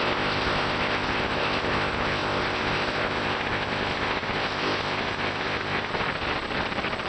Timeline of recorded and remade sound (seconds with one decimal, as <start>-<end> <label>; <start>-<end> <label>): 0.0-5.9 remade; 5.9-7.1 recorded